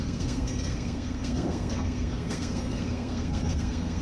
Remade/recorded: remade